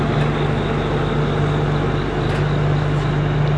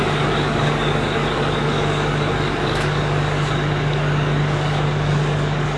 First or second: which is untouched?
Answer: first